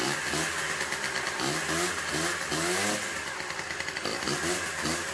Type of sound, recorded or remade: recorded